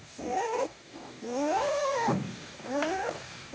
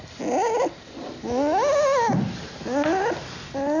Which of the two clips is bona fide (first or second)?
second